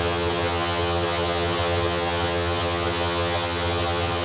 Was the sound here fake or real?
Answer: fake